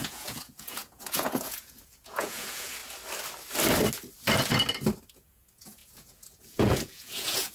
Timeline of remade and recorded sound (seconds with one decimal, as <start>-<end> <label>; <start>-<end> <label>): 0.0-2.8 remade; 2.8-5.1 recorded; 5.1-7.5 remade